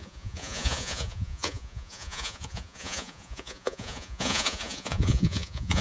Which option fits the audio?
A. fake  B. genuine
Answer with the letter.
A